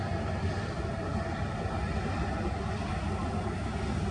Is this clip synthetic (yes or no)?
no